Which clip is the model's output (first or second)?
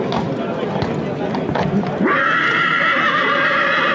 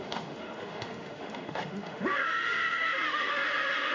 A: second